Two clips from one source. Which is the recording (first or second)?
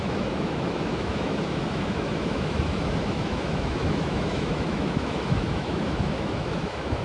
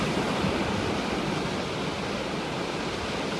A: second